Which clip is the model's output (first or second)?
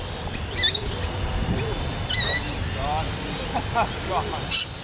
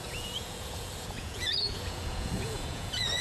second